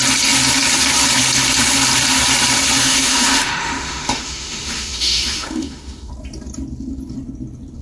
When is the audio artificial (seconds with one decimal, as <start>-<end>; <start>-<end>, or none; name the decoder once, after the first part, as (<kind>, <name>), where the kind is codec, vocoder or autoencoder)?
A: 2.8-6.1 (autoencoder, DAC-VAE)